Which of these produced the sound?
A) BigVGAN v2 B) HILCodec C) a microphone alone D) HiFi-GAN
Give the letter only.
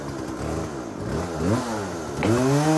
C